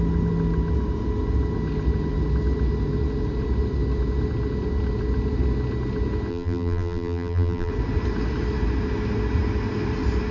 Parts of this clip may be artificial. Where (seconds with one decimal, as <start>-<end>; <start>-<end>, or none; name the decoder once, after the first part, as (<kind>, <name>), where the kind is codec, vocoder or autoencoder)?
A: 6.3-7.7 (vocoder, BigVGAN v2)

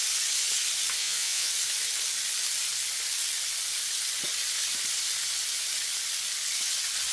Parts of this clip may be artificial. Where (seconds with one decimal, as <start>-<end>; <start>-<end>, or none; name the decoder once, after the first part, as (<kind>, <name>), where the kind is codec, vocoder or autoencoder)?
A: 1.0-1.5 (vocoder, Vocos)

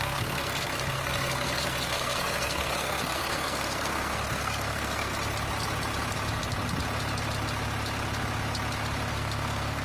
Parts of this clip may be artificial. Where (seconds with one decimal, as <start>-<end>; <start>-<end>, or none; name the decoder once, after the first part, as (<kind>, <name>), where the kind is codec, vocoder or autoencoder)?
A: 0.0-5.1 (codec, SNAC); 9.1-9.8

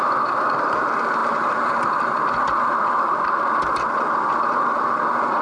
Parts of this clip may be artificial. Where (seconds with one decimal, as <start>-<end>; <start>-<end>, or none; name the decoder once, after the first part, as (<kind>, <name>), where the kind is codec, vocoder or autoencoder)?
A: none

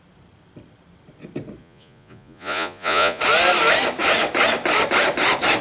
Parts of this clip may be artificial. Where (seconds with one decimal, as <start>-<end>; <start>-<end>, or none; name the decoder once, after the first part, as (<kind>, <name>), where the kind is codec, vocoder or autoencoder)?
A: 1.6-3.2 (vocoder, Vocos)

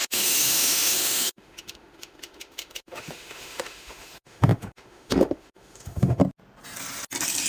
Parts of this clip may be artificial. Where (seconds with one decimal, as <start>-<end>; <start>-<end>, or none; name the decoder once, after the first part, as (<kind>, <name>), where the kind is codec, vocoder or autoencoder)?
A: 0.0-6.2 (autoencoder, DAC-VAE)

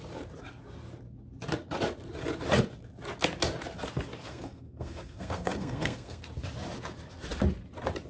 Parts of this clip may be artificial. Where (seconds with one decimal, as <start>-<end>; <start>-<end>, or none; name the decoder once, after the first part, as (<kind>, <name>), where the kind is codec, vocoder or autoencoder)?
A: 4.3-6.2 (codec, SNAC)